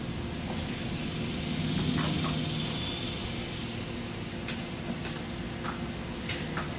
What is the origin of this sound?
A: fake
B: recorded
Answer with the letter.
B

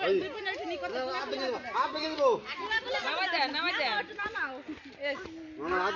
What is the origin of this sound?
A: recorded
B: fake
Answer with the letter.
A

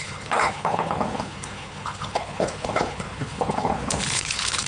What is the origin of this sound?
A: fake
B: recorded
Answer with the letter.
A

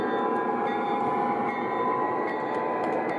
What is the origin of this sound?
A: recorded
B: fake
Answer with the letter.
A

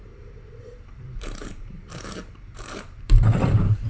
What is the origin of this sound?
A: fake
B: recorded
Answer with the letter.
A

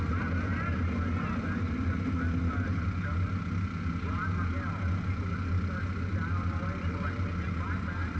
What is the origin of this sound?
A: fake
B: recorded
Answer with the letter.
B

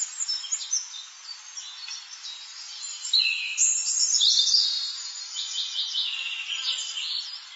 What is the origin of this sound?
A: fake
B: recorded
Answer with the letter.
B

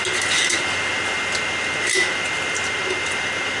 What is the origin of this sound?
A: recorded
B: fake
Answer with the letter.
A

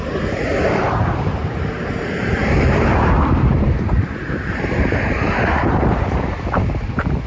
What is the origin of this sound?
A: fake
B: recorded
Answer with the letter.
A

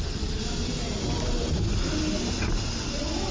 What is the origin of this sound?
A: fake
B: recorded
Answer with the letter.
B